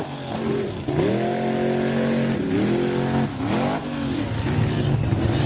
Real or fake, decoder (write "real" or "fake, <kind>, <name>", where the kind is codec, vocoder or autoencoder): real